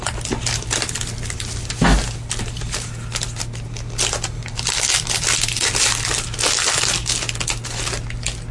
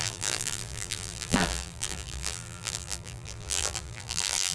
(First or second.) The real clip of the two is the first